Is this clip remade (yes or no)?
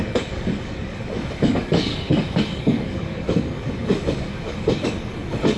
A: yes